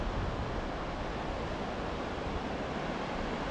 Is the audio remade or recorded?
recorded